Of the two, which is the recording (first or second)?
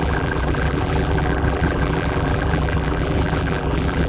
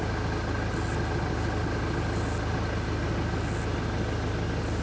second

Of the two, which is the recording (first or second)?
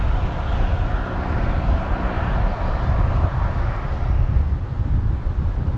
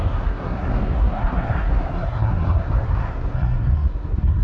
first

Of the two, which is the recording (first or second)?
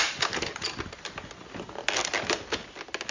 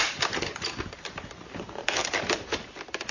first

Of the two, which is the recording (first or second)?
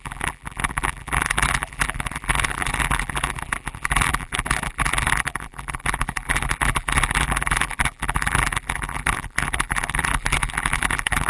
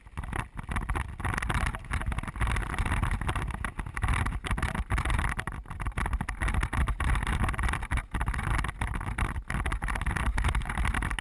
second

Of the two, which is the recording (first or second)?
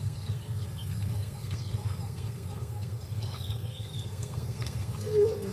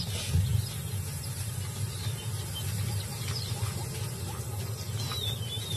second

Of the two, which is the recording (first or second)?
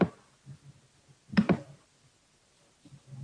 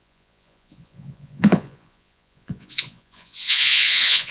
first